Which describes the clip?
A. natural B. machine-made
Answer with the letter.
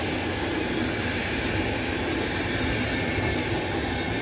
A